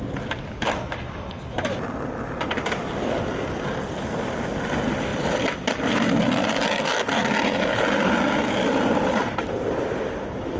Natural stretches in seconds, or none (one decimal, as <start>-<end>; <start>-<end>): 0.0-10.6